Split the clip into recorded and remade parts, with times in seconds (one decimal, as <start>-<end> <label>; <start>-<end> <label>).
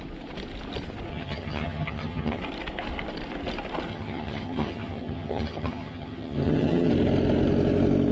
0.0-1.1 recorded; 1.1-2.4 remade; 2.4-3.9 recorded; 3.9-6.9 remade; 6.9-8.1 recorded